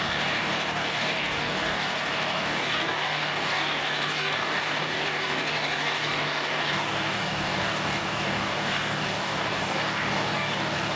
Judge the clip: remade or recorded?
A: remade